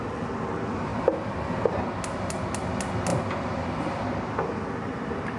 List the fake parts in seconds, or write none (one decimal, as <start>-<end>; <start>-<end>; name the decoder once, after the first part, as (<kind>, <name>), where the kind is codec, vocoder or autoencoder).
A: none